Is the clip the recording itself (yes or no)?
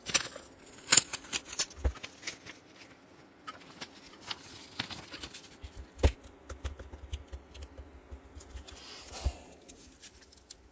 yes